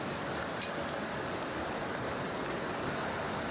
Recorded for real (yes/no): yes